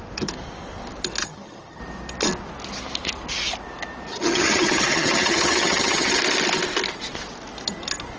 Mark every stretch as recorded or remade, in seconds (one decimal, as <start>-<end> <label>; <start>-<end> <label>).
0.0-1.2 recorded; 1.2-1.8 remade; 1.8-4.1 recorded; 4.1-6.2 remade; 6.2-8.2 recorded